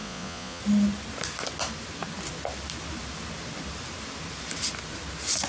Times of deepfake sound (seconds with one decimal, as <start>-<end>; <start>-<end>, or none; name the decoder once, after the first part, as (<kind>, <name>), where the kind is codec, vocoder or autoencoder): 0.0-0.6 (vocoder, Vocos)